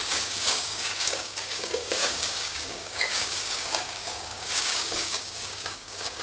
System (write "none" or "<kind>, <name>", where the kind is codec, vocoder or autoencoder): codec, DAC